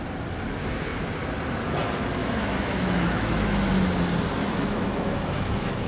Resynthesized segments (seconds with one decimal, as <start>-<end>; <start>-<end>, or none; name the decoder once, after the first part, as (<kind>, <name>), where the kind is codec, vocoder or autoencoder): 2.2-3.7 (autoencoder, DAC-VAE); 4.4-5.9